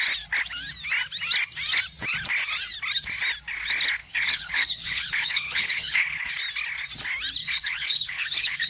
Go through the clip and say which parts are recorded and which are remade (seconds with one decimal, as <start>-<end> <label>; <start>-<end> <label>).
0.0-4.0 recorded; 4.0-6.3 remade; 6.3-7.4 recorded; 7.4-8.7 remade